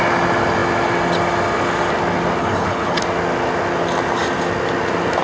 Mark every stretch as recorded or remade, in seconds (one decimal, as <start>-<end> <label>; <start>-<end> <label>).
0.0-2.4 recorded; 2.4-3.0 remade; 3.0-5.2 recorded